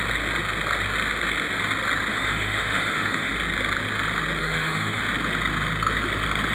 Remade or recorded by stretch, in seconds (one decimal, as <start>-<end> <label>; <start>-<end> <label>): 0.0-2.1 recorded; 2.1-3.3 remade; 3.3-4.4 recorded; 4.4-5.0 remade; 5.0-6.5 recorded